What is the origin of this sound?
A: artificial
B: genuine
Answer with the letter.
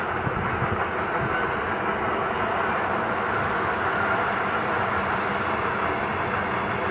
B